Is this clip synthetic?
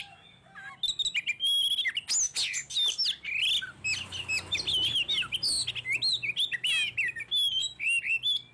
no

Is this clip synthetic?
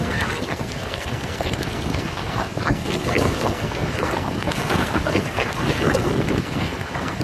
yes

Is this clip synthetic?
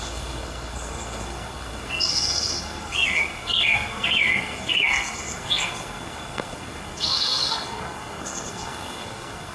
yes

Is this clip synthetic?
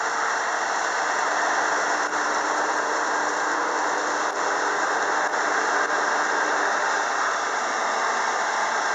no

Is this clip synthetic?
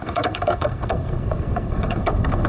yes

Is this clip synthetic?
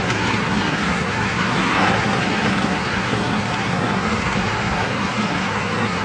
yes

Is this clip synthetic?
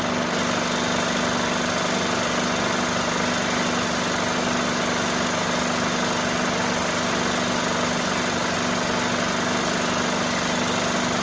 no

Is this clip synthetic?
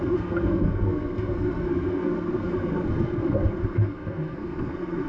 yes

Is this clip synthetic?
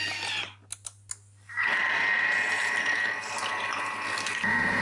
no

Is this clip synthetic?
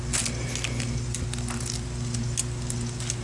no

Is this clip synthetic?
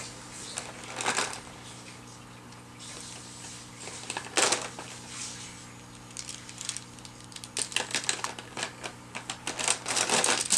no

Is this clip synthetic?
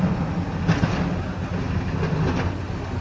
no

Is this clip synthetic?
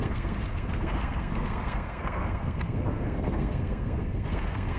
yes